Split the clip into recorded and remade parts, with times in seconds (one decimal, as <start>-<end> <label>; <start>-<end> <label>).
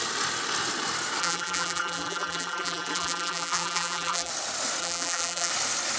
0.0-1.2 recorded; 1.2-4.3 remade; 4.3-4.8 recorded; 4.8-5.5 remade; 5.5-6.0 recorded